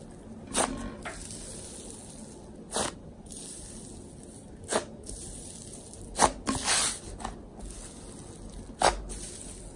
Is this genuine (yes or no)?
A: yes